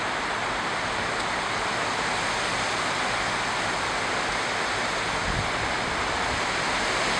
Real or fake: real